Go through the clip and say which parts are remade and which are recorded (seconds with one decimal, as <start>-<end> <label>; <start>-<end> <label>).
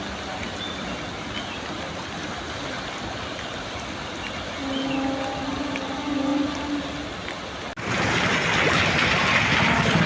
0.0-10.1 recorded